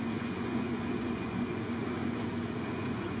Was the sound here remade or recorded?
remade